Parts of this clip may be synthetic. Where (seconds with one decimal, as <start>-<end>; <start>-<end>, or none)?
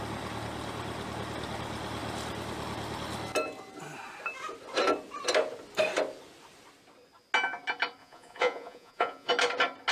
8.0-9.3